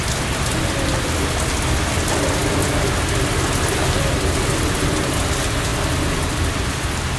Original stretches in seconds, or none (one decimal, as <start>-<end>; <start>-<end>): 0.0-7.2